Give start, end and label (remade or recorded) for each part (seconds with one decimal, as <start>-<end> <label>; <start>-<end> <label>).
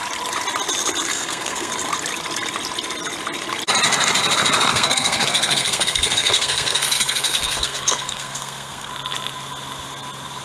0.0-1.1 recorded; 1.1-1.7 remade; 1.7-4.7 recorded; 4.7-8.9 remade; 8.9-10.4 recorded